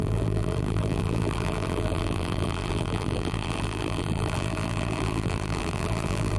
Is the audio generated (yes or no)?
yes